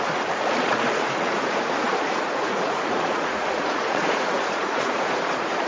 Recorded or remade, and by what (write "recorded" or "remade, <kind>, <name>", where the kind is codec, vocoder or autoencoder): remade, vocoder, Vocos